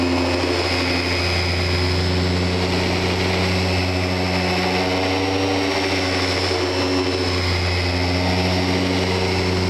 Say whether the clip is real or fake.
real